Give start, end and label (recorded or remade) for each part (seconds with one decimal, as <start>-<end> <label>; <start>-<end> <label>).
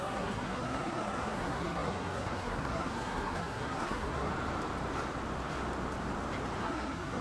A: 0.0-4.3 remade; 4.3-6.6 recorded; 6.6-7.2 remade